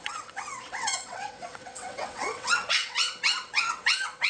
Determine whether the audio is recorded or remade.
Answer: remade